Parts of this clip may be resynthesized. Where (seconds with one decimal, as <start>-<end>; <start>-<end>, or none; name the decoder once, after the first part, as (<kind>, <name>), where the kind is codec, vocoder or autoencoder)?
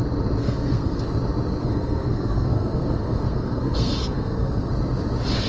0.4-1.0 (codec, SNAC); 1.6-4.7